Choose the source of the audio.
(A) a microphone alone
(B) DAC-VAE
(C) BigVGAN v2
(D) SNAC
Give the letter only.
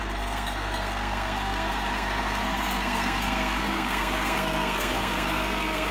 D